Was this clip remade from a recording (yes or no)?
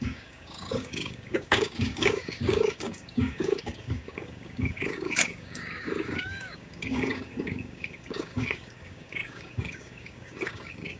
yes